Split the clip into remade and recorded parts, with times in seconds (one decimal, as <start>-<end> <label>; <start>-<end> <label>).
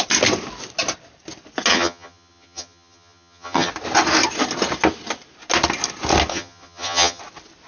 0.0-1.7 recorded; 1.7-3.7 remade; 3.7-6.3 recorded; 6.3-7.2 remade; 7.2-7.7 recorded